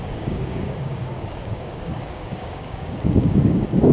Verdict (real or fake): fake